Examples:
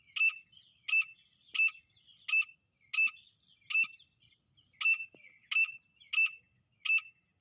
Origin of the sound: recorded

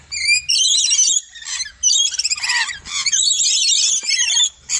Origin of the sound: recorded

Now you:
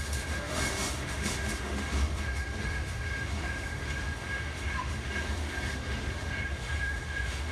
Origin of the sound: remade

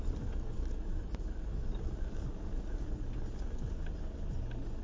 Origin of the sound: recorded